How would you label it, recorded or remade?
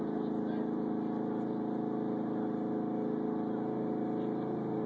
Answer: recorded